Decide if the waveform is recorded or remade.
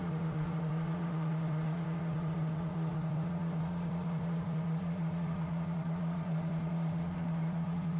remade